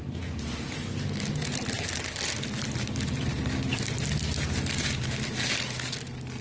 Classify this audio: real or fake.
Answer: real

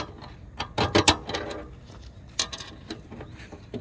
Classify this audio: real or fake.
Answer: real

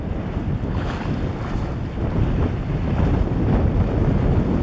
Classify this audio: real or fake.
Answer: real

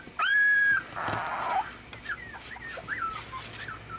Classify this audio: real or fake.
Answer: real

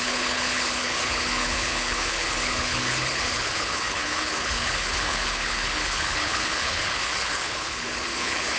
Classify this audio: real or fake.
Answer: fake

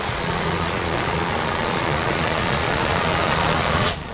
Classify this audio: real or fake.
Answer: fake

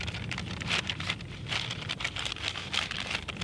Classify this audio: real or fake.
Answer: real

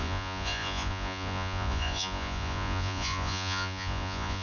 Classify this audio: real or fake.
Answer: fake